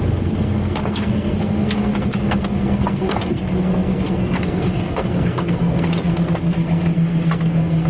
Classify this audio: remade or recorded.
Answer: remade